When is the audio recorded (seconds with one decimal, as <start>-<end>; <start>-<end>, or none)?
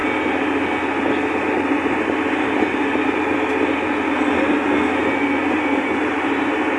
0.0-6.8